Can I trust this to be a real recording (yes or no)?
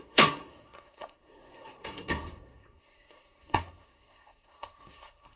no